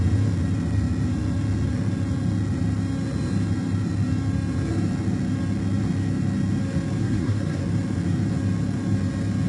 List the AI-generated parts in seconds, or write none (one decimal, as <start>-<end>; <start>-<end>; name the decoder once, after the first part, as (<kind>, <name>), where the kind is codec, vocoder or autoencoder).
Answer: 7.0-7.6 (codec, SNAC)